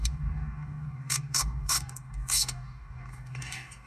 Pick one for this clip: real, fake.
fake